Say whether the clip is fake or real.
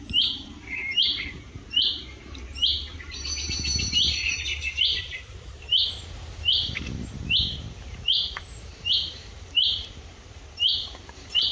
fake